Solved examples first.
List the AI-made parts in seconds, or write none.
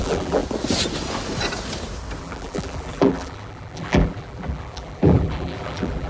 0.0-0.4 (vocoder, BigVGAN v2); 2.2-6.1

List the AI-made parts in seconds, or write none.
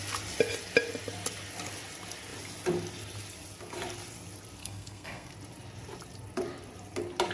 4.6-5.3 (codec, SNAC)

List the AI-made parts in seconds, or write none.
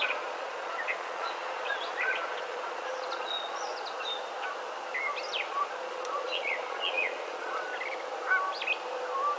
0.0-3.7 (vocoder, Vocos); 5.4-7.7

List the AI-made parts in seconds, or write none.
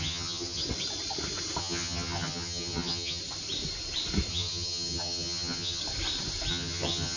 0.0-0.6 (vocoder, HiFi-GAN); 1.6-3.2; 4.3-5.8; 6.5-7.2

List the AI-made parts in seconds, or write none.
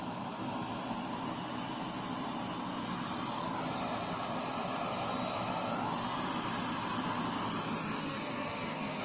8.0-9.0 (codec, SNAC)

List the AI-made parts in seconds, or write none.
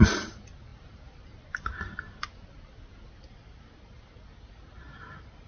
none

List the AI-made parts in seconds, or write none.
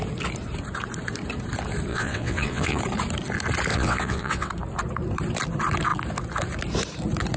1.9-2.8 (vocoder, WaveNeXt); 3.7-4.5